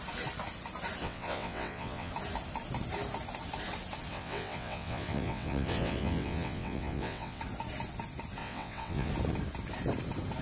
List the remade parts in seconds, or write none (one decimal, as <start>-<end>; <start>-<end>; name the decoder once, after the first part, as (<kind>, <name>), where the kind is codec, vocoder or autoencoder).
1.0-2.1 (vocoder, WaveNeXt); 4.1-7.4; 8.4-9.1